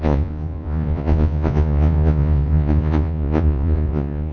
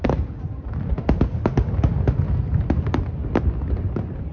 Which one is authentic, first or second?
second